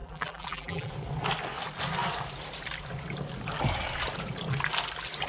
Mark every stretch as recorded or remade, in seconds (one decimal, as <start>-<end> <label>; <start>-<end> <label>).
0.0-0.9 remade; 0.9-5.3 recorded